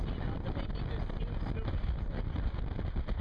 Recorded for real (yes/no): yes